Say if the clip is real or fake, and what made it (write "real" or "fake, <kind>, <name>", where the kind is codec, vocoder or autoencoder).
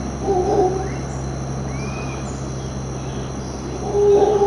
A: real